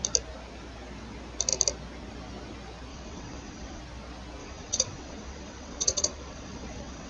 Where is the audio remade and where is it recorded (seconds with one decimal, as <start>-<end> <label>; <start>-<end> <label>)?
0.0-2.9 recorded; 2.9-3.8 remade; 3.8-4.4 recorded; 4.4-7.1 remade